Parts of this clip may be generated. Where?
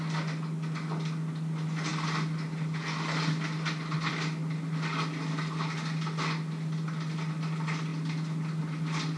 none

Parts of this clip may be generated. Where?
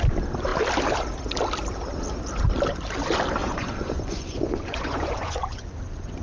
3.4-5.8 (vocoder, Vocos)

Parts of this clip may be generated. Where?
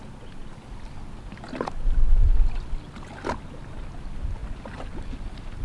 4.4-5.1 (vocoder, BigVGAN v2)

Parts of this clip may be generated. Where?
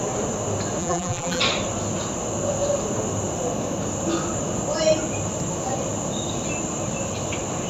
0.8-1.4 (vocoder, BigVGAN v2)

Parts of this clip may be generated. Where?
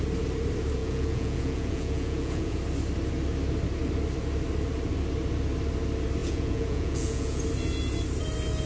0.8-2.6 (vocoder, Vocos); 6.2-7.4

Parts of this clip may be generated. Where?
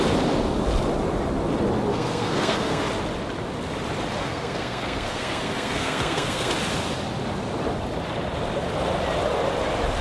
1.9-2.8 (codec, SNAC); 4.2-6.5